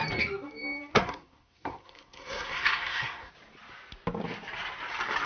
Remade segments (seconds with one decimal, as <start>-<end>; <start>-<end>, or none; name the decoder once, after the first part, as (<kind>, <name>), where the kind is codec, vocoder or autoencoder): 0.9-3.3 (codec, SNAC)

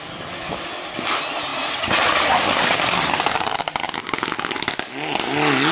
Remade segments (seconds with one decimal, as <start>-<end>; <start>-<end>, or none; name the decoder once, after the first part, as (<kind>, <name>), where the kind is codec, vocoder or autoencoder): none

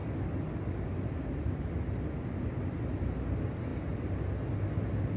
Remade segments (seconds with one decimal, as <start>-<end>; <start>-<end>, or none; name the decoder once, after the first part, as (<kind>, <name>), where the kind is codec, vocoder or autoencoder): none

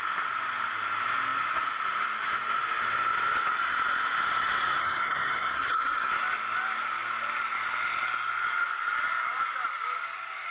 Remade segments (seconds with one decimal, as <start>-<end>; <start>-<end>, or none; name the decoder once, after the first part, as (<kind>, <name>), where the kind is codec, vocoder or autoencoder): 4.8-6.1 (codec, SNAC)

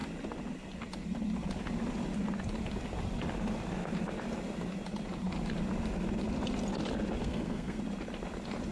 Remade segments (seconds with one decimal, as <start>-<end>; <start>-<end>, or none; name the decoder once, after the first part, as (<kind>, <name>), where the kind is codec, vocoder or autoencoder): 7.2-7.8 (codec, SNAC)

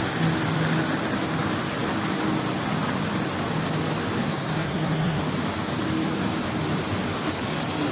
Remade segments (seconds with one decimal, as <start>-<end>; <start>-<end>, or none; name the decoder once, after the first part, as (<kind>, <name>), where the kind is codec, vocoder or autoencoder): 4.2-5.2 (codec, SNAC)